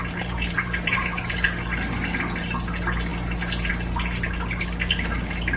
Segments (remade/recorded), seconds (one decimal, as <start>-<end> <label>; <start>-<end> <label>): 0.0-1.2 remade; 1.2-5.6 recorded